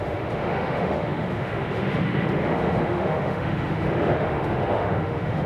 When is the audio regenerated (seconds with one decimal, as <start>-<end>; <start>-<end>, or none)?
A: 0.0-5.5